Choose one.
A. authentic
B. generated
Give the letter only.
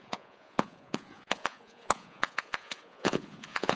B